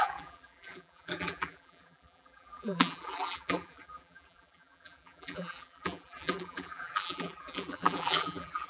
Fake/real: fake